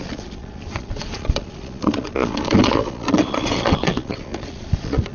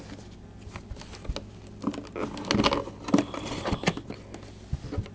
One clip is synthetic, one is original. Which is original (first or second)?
second